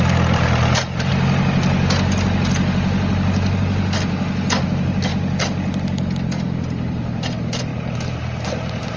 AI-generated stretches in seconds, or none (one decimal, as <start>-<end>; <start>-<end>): 0.0-1.1; 4.6-5.1; 6.4-9.0